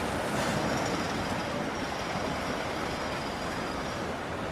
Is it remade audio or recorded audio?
remade